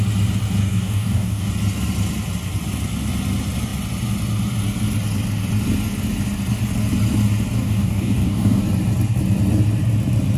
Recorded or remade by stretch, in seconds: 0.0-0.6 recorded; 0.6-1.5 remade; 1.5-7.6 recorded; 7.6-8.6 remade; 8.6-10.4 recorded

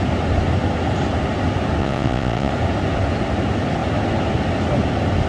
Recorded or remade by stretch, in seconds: 0.0-1.8 recorded; 1.8-2.5 remade; 2.5-5.3 recorded

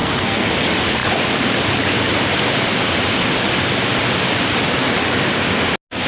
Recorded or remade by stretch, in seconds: 0.0-0.5 remade; 0.5-6.1 recorded

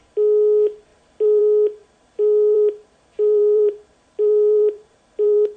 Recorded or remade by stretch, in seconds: 0.0-0.9 recorded; 0.9-1.4 remade; 1.4-1.8 recorded; 1.8-5.6 remade

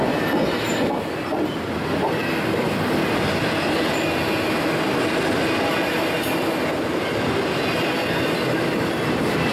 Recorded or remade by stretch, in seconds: 0.0-9.5 recorded

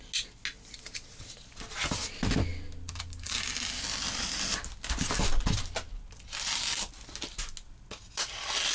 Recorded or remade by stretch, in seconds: 0.0-8.7 recorded

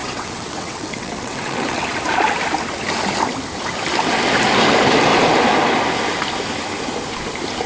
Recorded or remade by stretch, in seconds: 0.0-1.8 remade; 1.8-7.7 recorded

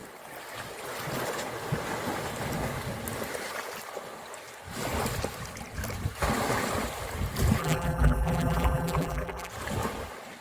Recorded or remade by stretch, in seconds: 0.0-7.6 recorded; 7.6-9.5 remade; 9.5-10.4 recorded